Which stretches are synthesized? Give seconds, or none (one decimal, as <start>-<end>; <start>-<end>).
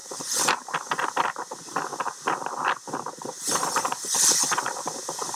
0.0-1.1